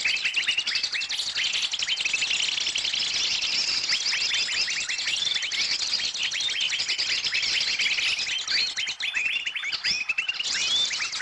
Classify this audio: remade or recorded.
recorded